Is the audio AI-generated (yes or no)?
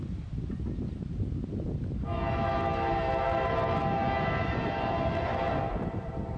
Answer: no